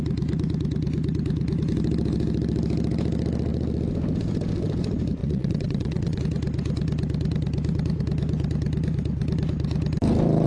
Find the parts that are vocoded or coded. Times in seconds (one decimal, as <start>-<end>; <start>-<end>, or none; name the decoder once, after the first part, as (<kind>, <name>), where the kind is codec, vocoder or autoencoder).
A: 5.2-6.2 (vocoder, Vocos)